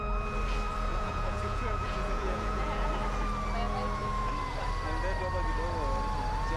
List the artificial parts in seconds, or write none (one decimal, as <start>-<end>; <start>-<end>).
0.9-2.9